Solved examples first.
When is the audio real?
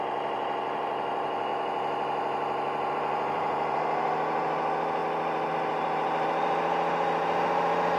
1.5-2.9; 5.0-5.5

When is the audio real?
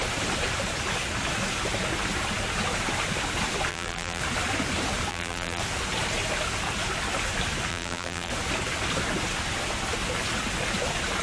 0.0-3.7; 4.2-5.1; 5.6-7.7; 8.3-11.2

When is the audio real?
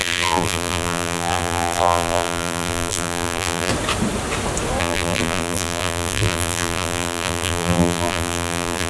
3.7-4.8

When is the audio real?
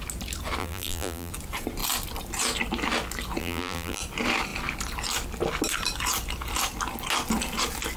0.0-0.6; 1.3-3.4; 4.0-8.0